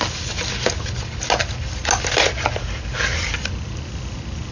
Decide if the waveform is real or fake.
real